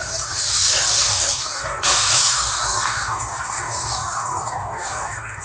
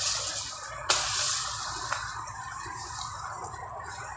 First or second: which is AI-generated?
first